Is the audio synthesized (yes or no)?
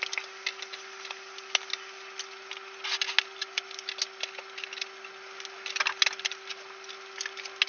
no